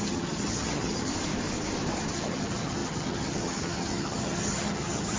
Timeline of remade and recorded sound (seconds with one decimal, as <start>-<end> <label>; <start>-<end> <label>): 0.0-1.1 remade; 1.1-2.1 recorded; 2.1-5.2 remade

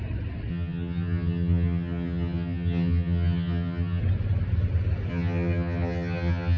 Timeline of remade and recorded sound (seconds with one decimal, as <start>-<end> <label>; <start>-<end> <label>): 0.0-0.5 recorded; 0.5-4.0 remade; 4.0-5.1 recorded; 5.1-6.6 remade